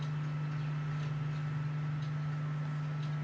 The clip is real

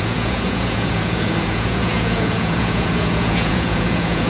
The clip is fake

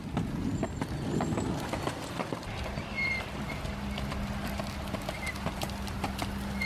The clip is real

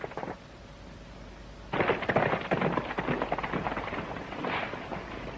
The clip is real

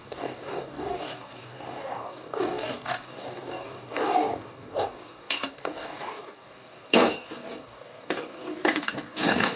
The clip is fake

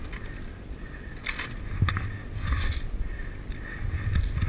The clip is real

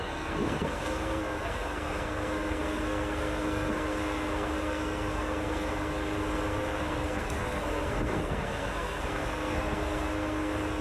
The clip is fake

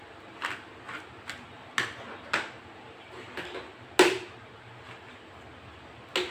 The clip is real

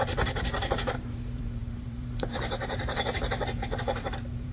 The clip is fake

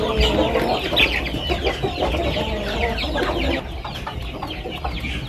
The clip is real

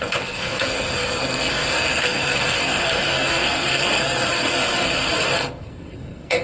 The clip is fake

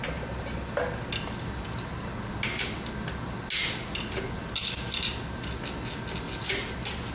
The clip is real